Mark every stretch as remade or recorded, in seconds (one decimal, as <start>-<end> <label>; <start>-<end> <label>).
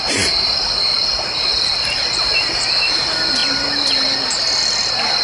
0.0-5.2 recorded